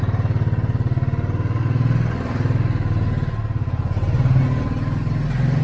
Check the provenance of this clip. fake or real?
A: real